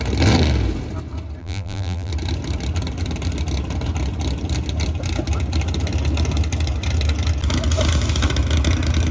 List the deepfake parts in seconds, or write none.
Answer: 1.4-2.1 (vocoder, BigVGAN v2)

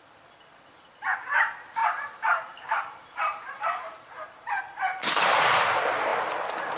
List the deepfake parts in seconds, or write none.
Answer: 1.8-4.6 (vocoder, BigVGAN v2)